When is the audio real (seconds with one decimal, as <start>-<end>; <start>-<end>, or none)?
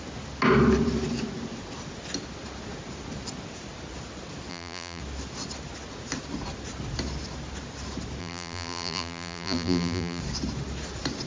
0.0-4.5; 5.0-8.2; 10.2-11.3